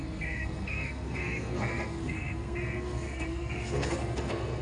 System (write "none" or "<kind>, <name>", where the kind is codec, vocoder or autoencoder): codec, SNAC